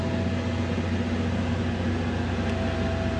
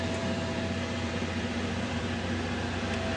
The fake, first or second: second